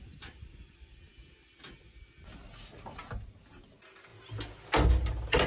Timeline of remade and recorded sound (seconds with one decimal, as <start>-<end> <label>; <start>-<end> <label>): 0.0-5.5 recorded